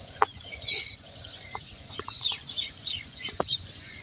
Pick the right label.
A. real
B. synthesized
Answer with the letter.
B